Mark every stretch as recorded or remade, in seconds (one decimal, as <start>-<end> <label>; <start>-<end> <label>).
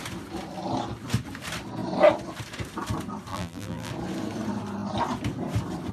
0.0-3.3 recorded; 3.3-3.9 remade; 3.9-5.9 recorded